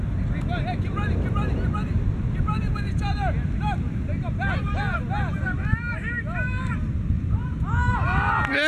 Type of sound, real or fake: real